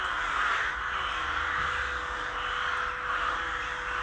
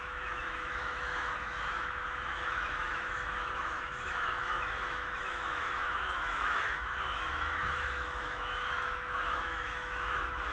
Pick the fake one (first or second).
second